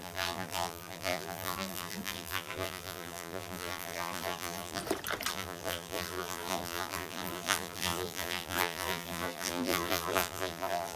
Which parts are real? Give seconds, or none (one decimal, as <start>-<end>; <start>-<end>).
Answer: 4.8-5.3

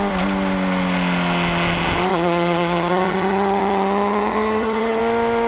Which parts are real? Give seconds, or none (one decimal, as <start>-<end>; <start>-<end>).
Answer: 0.0-2.1; 5.0-5.5

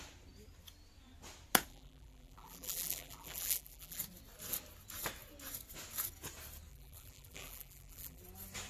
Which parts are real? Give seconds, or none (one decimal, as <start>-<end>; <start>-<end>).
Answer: 0.0-1.7; 4.0-6.7; 8.2-8.7

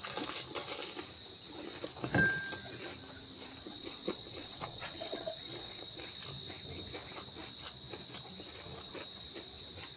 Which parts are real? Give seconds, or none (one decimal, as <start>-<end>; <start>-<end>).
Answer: 0.0-3.7; 6.0-10.0

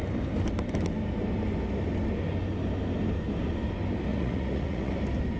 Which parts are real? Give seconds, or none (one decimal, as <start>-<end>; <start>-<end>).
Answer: 0.0-4.1; 4.9-5.4

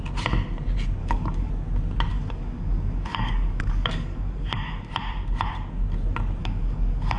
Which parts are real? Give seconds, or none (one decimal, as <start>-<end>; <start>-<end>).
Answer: 0.0-1.0; 1.5-2.1; 4.9-6.4

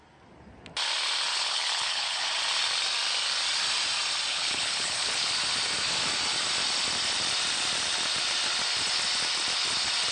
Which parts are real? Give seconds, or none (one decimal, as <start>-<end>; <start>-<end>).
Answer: 0.0-1.3; 2.3-4.3; 5.3-10.1